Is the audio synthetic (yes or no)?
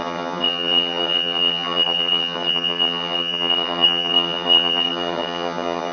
yes